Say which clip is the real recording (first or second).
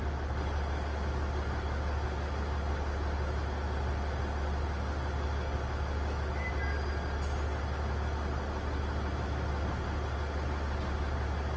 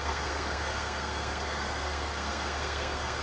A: first